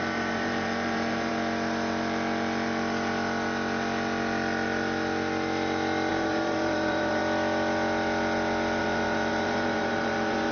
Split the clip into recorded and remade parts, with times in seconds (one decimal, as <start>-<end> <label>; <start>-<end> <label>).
0.0-1.3 remade; 1.3-6.1 recorded; 6.1-7.2 remade; 7.2-8.8 recorded; 8.8-10.5 remade